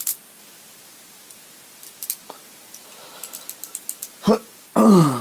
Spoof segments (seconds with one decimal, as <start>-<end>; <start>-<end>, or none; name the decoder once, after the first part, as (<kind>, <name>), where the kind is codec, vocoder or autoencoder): none